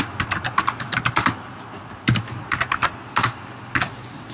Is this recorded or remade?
recorded